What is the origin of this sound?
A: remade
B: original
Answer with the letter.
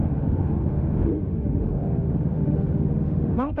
A